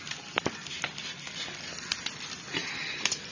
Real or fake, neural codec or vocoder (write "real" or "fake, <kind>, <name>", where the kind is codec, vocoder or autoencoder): real